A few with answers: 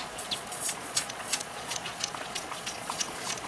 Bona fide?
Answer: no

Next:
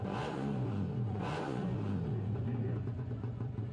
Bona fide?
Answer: no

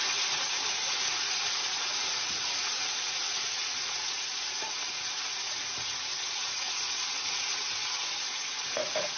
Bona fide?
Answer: no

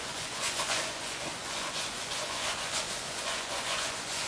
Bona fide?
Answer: no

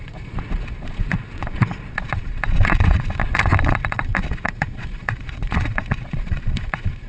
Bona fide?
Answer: no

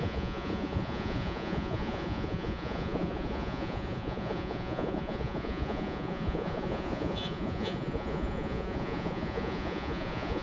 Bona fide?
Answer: no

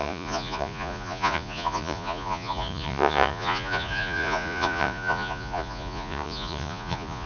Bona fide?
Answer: no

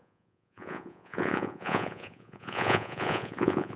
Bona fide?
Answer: no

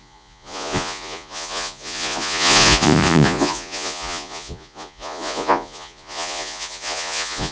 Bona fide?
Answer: no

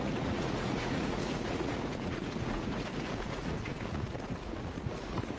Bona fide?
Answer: no